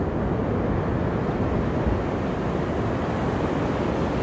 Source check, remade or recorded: recorded